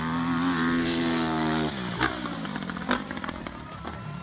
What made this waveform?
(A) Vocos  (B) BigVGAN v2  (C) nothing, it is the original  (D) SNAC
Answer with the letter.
C